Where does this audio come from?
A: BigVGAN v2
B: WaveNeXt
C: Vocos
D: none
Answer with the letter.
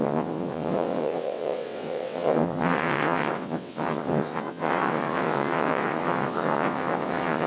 B